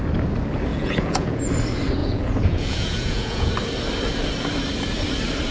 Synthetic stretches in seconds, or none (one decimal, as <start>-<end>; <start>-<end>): 0.7-1.4; 2.0-3.5